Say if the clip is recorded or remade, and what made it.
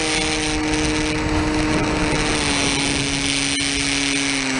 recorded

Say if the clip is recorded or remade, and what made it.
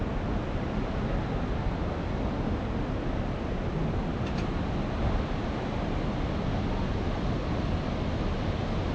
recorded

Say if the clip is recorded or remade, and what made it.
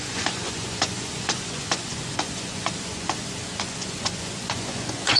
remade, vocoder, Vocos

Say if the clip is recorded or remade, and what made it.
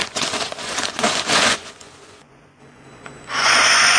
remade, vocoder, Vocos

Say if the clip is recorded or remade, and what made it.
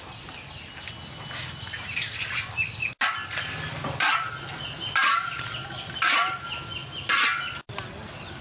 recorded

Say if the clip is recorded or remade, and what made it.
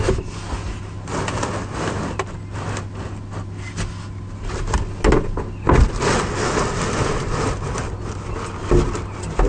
recorded